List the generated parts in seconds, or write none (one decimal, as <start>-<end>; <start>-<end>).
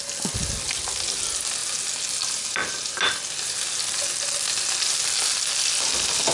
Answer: none